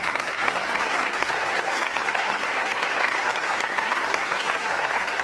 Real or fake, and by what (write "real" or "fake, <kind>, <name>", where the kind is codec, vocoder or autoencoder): fake, codec, SNAC